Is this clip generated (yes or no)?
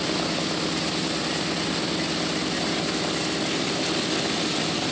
no